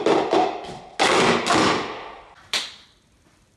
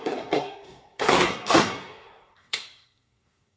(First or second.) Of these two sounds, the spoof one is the second